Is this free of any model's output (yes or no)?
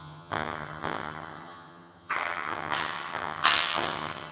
no